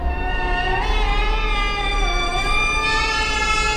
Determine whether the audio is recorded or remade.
recorded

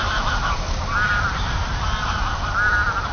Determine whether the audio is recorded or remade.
recorded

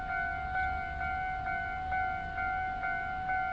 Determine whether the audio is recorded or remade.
recorded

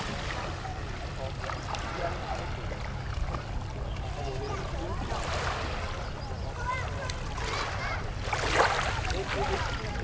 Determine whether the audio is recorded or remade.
recorded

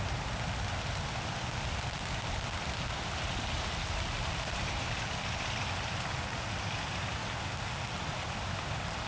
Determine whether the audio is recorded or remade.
recorded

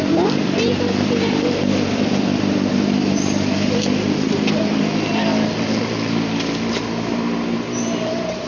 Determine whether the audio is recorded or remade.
recorded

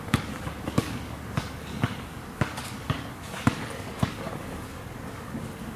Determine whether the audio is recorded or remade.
remade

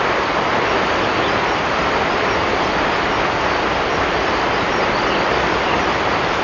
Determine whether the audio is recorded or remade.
recorded